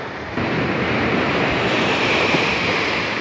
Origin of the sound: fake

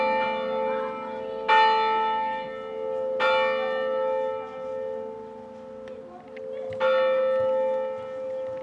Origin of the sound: real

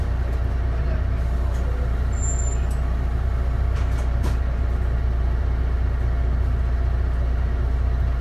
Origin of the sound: real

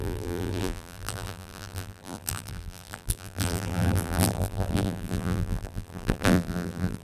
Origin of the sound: fake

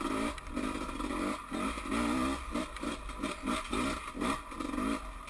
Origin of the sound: real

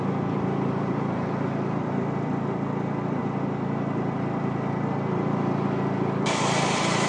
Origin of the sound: fake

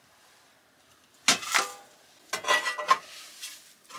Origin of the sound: real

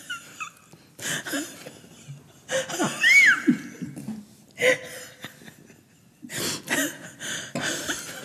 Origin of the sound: real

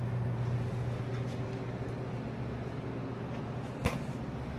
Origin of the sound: real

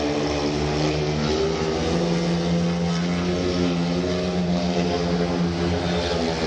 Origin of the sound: real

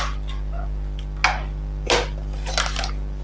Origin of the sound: real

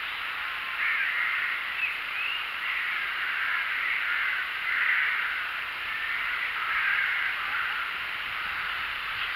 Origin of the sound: fake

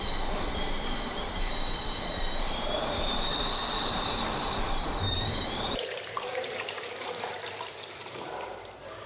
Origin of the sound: fake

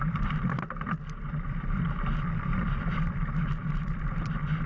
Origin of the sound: fake